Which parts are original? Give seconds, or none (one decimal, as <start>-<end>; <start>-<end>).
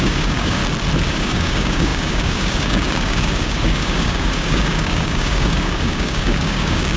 0.6-1.1